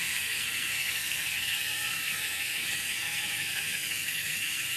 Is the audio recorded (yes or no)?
no